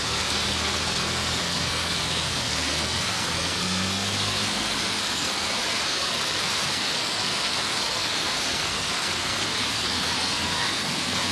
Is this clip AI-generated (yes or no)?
yes